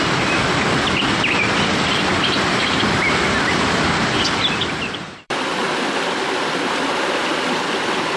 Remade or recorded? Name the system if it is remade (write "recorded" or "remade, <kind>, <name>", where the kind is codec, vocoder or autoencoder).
remade, vocoder, BigVGAN v2